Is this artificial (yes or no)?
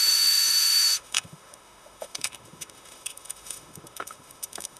yes